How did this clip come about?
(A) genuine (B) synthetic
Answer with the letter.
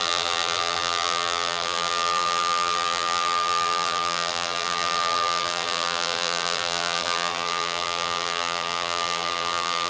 B